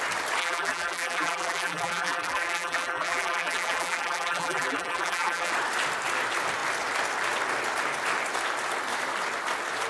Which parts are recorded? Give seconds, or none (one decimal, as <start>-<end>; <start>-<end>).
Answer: 0.0-0.4; 5.5-9.9

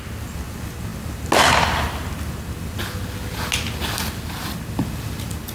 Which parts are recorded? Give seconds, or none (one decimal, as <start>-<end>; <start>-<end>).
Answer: 0.0-5.5

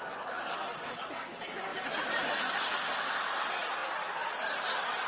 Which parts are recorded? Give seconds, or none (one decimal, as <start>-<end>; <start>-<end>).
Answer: none